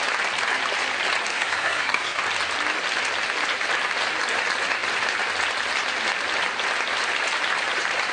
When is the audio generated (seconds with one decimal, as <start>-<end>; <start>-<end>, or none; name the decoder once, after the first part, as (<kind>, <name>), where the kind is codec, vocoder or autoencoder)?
1.3-2.2 (codec, SNAC)